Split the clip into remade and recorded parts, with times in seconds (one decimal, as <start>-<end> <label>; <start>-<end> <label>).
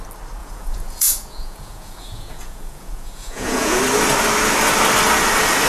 0.0-0.4 recorded; 0.4-3.8 remade; 3.8-5.7 recorded